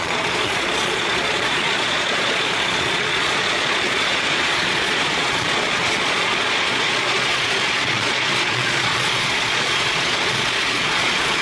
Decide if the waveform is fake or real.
fake